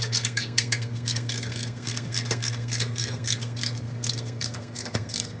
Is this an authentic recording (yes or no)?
no